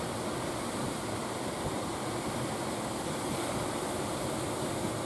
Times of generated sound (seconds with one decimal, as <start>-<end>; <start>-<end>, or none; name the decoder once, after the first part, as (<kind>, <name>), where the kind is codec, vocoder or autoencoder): 0.8-1.7 (vocoder, BigVGAN v2)

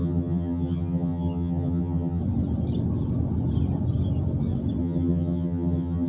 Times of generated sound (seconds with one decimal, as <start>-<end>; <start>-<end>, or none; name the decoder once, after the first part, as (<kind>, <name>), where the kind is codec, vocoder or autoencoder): 0.0-2.2 (vocoder, HiFi-GAN); 4.8-6.1

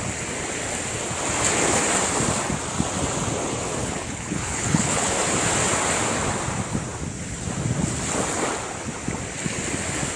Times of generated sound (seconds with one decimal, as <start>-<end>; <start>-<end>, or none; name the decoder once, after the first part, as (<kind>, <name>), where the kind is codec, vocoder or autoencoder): 3.8-5.1 (codec, HILCodec)

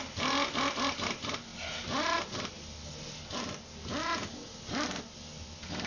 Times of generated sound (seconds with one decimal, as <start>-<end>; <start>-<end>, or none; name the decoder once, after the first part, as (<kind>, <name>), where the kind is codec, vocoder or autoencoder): none

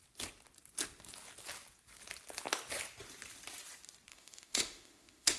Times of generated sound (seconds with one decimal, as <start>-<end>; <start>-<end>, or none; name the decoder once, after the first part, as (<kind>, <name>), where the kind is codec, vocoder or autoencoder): 4.1-5.4 (autoencoder, DAC-VAE)

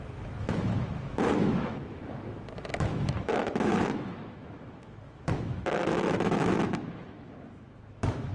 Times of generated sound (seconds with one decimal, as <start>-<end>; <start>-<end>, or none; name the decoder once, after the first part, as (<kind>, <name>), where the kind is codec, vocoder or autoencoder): 0.0-8.3 (autoencoder, DAC-VAE)

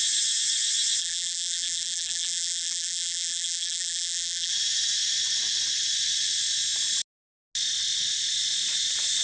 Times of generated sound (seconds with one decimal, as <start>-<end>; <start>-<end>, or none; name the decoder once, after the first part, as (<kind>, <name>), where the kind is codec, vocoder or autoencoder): 1.0-4.5 (vocoder, BigVGAN v2)

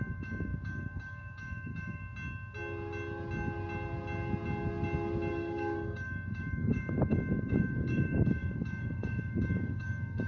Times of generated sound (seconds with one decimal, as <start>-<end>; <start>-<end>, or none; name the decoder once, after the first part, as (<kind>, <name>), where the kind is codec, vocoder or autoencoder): 0.0-2.0 (codec, DAC); 5.3-10.3